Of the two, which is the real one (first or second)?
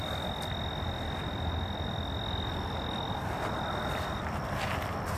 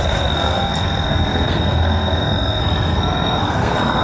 first